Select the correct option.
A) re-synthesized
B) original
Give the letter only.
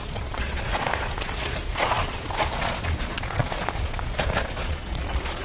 A